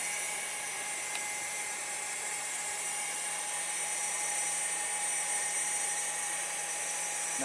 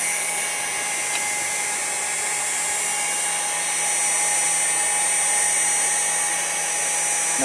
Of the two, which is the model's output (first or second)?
first